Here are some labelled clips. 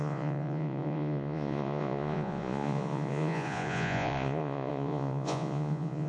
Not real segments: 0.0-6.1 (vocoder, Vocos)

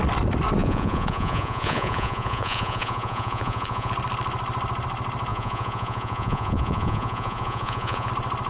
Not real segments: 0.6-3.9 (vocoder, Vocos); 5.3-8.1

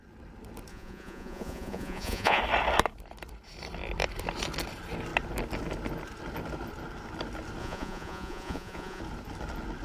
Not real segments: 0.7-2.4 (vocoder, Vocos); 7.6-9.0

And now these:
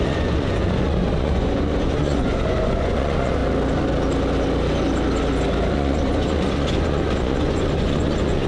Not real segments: 0.0-3.4 (vocoder, Vocos); 5.7-8.5

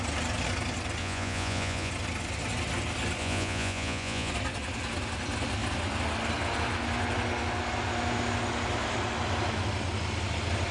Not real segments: 1.0-1.9 (vocoder, Vocos); 3.2-4.3